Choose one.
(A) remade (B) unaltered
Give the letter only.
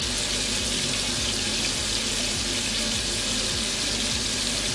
B